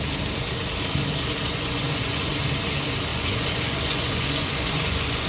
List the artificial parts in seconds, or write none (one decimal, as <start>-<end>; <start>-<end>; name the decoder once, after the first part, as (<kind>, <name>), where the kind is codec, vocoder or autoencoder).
1.4-2.3 (vocoder, Vocos); 3.1-5.3